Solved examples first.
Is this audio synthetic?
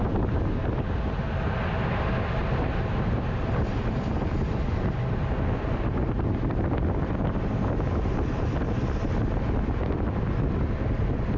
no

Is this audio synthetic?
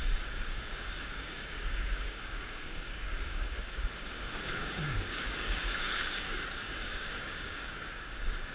yes